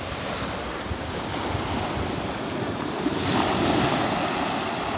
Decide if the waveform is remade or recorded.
recorded